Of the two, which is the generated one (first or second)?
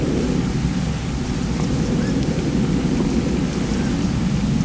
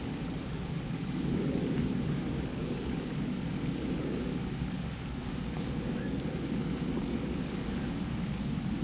second